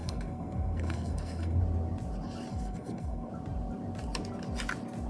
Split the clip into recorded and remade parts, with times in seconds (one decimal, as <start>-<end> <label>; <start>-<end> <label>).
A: 0.0-1.6 remade; 1.6-2.5 recorded; 2.5-3.3 remade; 3.3-5.1 recorded